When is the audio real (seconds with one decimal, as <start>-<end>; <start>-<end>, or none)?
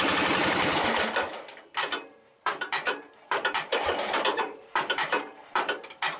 0.0-2.1; 5.8-6.2